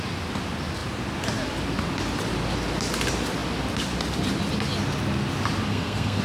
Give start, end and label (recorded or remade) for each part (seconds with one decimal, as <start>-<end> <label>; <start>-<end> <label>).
0.0-5.7 recorded; 5.7-6.2 remade